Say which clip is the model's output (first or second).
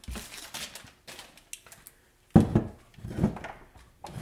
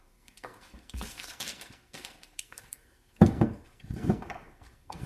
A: second